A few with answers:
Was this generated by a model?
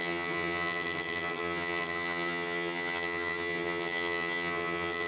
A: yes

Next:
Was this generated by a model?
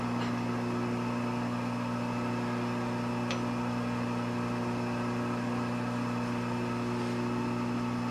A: no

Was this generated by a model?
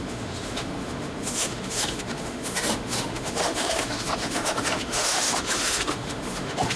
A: yes